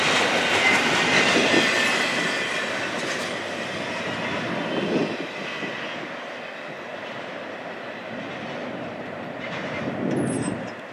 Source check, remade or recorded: recorded